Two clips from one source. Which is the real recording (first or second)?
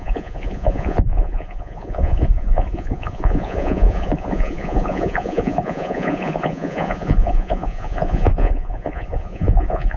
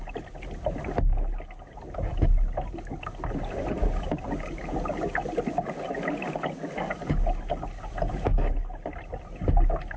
second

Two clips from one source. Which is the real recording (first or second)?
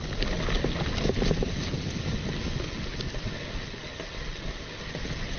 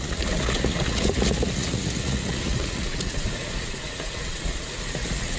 first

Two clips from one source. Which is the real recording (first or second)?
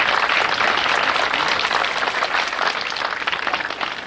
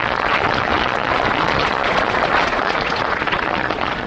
first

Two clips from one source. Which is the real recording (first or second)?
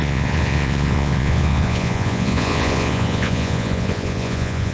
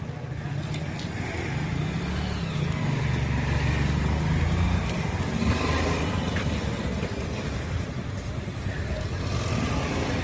second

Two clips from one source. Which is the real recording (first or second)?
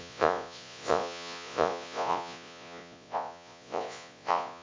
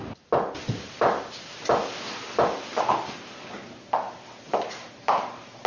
second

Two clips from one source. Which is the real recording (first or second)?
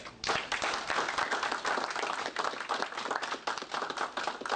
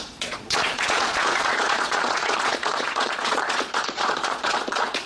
first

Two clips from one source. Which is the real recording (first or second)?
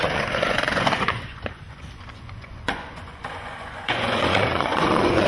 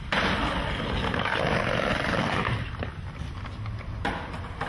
second